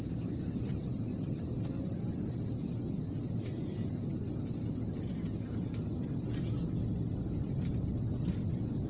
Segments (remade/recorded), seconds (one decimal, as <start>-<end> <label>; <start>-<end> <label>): 0.0-8.9 recorded